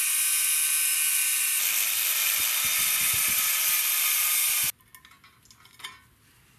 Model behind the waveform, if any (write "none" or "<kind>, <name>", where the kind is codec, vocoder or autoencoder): none